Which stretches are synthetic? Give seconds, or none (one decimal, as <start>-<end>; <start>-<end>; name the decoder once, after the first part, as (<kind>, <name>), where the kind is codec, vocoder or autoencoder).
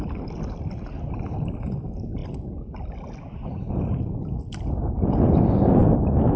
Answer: none